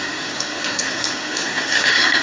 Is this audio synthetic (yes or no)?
yes